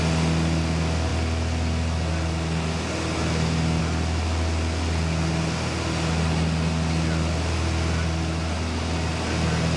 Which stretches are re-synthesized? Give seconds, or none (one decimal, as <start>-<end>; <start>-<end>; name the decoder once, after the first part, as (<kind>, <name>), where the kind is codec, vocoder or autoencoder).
none